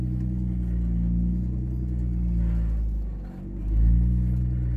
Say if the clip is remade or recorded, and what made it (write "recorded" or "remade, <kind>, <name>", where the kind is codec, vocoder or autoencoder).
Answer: recorded